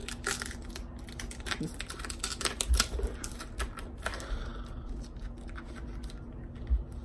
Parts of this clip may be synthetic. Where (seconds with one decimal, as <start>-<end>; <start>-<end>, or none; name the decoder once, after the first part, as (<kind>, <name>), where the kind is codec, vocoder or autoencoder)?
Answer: none